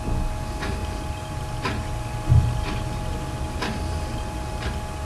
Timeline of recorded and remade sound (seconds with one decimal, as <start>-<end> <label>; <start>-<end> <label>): 0.0-5.0 recorded